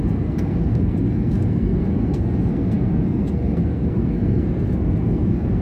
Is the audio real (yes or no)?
no